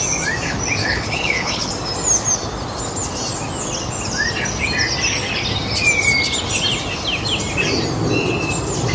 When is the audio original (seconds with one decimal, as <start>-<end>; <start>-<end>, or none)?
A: 0.0-0.8; 1.7-8.9